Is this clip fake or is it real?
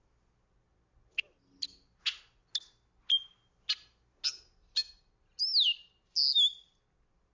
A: real